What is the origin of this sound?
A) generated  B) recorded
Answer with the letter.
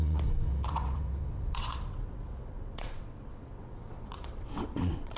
A